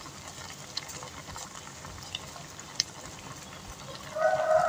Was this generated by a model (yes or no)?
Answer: no